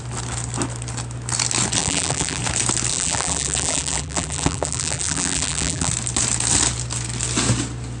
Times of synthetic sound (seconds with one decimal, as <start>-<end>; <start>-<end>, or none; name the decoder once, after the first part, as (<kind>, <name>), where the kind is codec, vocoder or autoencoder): 1.8-2.4 (vocoder, BigVGAN v2); 2.9-5.9